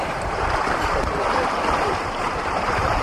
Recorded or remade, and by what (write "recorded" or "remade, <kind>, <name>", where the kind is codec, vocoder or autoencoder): remade, vocoder, BigVGAN v2